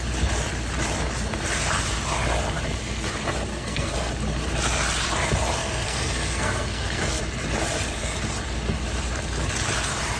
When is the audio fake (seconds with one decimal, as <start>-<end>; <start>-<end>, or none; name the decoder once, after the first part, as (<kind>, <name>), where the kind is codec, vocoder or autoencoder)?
3.5-4.1 (codec, SNAC); 5.6-7.2